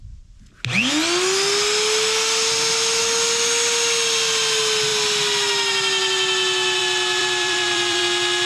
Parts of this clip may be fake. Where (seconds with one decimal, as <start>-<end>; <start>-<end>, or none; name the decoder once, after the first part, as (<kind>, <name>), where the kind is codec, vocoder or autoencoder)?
7.2-8.0 (vocoder, BigVGAN v2)